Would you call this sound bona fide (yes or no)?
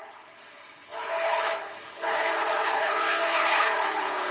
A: no